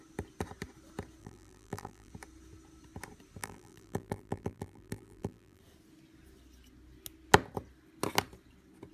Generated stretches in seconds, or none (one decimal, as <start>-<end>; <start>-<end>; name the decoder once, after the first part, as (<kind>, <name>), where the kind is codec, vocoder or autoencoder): 1.2-2.1 (vocoder, BigVGAN v2); 3.4-5.6